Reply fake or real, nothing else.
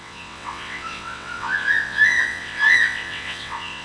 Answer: fake